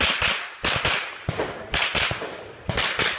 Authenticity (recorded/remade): recorded